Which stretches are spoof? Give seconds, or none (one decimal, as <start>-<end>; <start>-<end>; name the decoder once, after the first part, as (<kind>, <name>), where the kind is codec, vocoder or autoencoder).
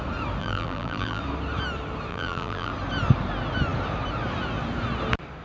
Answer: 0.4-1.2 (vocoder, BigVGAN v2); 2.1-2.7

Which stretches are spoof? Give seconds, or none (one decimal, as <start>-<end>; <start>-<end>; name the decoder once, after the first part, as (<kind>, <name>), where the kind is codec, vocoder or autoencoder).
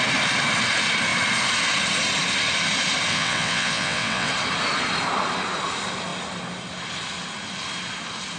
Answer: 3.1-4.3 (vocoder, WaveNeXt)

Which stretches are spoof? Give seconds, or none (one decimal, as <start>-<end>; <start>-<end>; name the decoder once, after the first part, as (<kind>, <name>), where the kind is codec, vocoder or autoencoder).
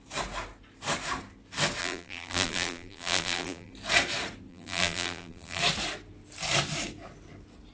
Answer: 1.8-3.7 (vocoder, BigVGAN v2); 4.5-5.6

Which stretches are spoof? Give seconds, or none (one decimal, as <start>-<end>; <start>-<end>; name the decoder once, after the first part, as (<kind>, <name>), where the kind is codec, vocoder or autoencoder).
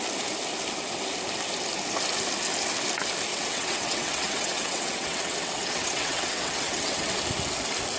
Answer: 3.3-7.1 (vocoder, WaveNeXt)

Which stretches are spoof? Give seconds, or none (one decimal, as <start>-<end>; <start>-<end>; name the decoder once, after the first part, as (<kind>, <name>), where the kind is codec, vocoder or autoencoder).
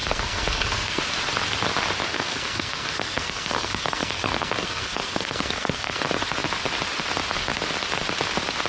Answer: 0.0-1.1 (codec, SNAC); 2.1-6.0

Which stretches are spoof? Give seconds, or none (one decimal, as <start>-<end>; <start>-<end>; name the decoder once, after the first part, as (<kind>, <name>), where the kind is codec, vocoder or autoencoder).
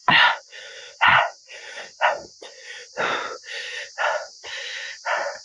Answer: 0.0-2.8 (vocoder, Vocos); 4.4-5.4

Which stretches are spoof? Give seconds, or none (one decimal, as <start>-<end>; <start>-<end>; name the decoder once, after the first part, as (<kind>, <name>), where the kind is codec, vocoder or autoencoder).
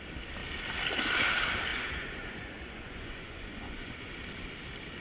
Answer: 1.7-4.1 (vocoder, Vocos)